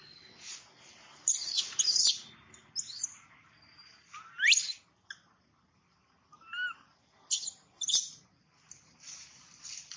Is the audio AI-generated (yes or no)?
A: no